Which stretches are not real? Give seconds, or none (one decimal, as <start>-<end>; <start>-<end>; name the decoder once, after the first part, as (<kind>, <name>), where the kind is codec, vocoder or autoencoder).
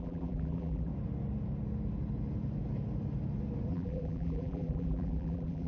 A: 0.0-0.9 (vocoder, BigVGAN v2); 3.7-5.7